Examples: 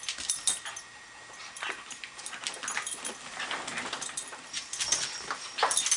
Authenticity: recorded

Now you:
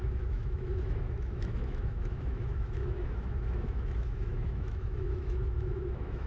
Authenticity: remade